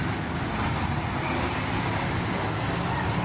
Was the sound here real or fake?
real